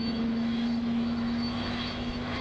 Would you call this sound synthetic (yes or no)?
yes